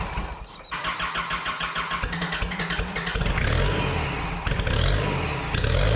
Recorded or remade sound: recorded